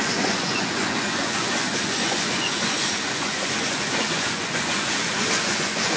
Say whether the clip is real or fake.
fake